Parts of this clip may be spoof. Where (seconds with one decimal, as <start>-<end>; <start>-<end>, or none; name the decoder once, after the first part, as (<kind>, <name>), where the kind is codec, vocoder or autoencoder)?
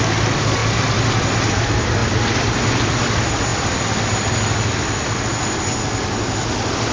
none